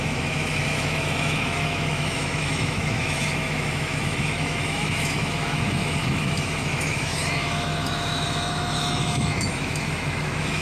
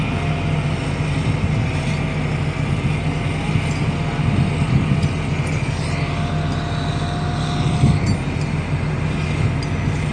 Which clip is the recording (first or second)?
second